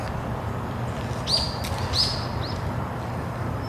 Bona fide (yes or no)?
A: yes